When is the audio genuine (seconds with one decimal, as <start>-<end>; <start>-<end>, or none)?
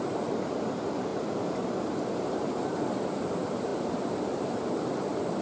none